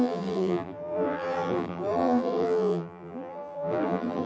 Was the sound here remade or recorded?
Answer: remade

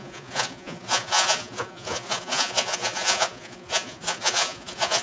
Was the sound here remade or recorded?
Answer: remade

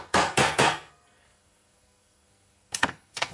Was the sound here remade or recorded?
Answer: remade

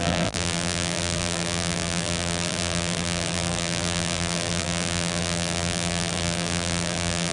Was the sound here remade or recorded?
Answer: remade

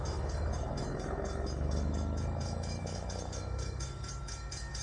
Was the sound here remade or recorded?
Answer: remade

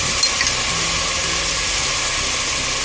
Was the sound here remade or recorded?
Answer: recorded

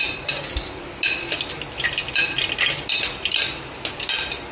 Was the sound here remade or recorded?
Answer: recorded